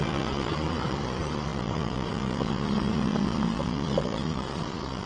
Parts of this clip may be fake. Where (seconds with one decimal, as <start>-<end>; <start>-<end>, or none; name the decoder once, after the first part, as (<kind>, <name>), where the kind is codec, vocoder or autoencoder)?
0.0-5.1 (vocoder, Vocos)